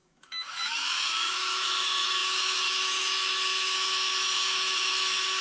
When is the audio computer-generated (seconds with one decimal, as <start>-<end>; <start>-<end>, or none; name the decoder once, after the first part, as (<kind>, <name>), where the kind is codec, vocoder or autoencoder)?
0.0-5.4 (autoencoder, DAC-VAE)